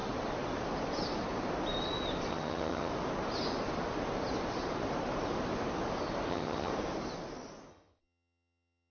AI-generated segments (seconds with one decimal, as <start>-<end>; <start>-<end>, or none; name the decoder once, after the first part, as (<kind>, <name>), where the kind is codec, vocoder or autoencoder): 2.3-2.9 (vocoder, HiFi-GAN); 6.3-6.7; 7.7-8.9